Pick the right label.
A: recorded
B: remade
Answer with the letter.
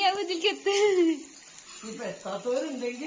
A